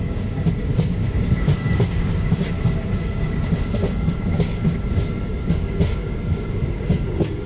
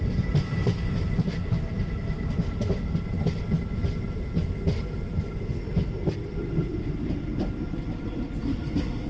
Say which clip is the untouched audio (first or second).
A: second